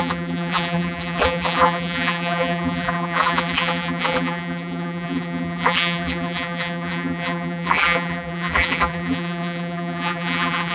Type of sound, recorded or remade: remade